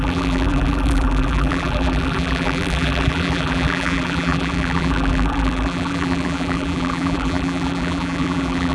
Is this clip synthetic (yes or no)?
yes